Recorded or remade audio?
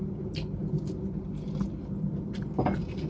recorded